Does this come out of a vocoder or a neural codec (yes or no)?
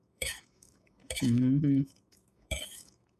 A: yes